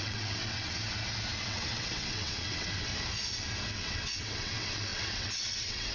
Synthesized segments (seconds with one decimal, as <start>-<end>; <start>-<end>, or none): 0.0-0.8; 1.4-2.9; 3.7-5.9